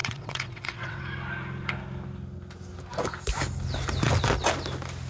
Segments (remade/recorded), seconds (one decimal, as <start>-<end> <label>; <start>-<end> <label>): 0.0-1.0 remade; 1.0-5.1 recorded